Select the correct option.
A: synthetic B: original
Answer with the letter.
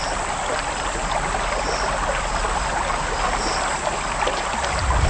B